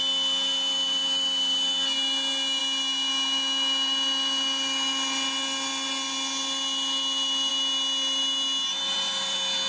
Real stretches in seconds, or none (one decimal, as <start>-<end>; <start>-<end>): 0.0-9.7